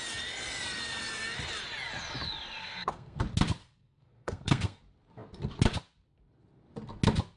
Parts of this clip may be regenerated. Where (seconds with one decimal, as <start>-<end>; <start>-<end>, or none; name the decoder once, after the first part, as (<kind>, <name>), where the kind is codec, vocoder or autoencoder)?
2.6-3.2 (codec, SNAC); 3.6-4.8